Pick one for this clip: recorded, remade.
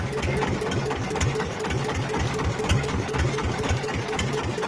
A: remade